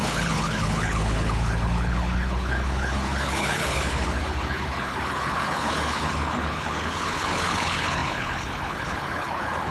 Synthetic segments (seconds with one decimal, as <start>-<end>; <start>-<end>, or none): 0.0-9.7

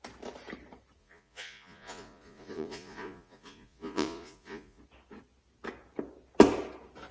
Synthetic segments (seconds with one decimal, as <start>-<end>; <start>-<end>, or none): 1.0-4.8

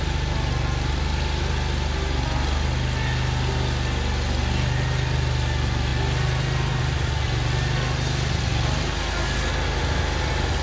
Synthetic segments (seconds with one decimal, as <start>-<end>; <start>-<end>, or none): none

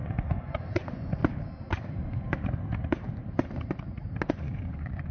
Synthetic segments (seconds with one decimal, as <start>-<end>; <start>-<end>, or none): 0.0-1.2; 4.3-5.1

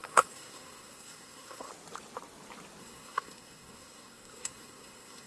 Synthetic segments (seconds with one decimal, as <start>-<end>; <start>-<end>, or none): 0.0-1.7; 2.8-5.3